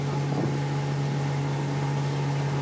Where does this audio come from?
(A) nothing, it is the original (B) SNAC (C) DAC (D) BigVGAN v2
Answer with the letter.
A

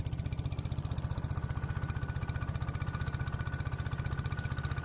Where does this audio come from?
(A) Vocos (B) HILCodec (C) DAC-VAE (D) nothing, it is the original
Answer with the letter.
D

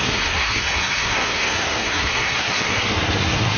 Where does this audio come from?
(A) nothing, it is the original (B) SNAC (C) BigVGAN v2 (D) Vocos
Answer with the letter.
B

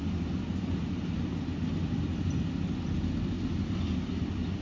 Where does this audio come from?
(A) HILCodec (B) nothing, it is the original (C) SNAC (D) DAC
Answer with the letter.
B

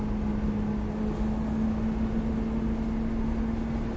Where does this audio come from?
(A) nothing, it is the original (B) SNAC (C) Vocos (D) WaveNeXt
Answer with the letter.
A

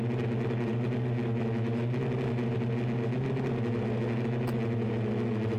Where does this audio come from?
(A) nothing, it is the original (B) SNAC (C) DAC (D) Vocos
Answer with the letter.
A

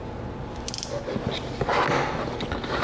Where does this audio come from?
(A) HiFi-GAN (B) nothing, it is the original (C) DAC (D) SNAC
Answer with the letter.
B